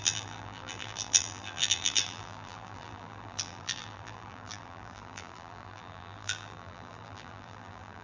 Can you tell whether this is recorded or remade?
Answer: remade